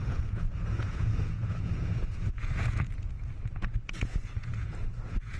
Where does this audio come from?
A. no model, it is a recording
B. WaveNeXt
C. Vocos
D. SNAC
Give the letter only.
C